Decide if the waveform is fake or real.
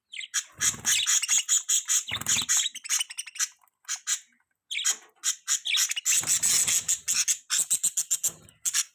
real